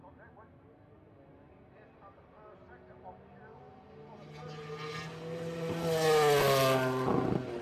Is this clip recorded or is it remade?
recorded